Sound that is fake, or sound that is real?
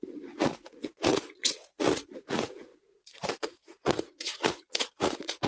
fake